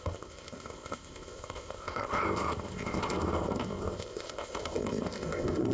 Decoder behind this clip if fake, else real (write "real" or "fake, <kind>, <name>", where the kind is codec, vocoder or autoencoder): fake, codec, ZipCodec